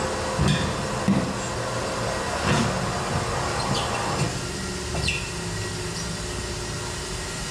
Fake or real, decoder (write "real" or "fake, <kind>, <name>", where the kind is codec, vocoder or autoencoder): real